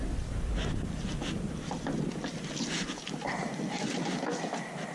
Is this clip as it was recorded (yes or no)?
yes